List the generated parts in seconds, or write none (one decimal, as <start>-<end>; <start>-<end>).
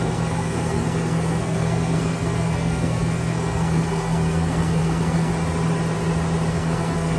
0.0-5.3; 6.5-7.2